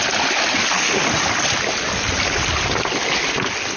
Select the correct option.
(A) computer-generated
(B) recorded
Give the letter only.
B